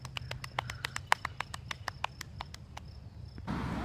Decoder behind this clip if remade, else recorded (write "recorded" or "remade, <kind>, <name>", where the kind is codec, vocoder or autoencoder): recorded